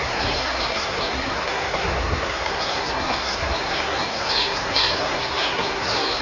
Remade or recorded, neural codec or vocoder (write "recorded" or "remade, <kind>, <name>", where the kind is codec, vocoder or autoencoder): remade, codec, SNAC